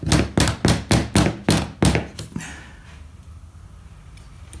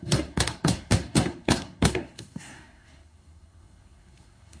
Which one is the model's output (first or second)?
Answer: second